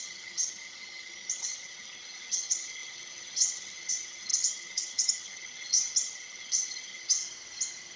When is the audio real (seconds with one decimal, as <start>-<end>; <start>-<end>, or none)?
7.2-8.0